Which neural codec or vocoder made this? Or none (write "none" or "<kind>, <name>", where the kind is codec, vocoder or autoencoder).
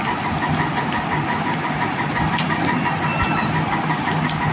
none